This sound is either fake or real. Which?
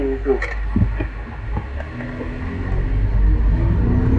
real